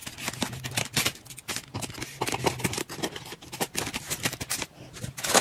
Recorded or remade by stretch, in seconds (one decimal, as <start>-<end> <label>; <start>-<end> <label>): 0.0-5.4 recorded